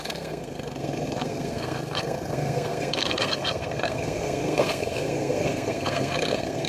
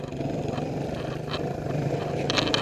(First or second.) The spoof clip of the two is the first